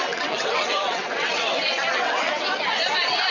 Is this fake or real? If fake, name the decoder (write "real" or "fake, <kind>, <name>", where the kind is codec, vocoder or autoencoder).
fake, vocoder, WaveNeXt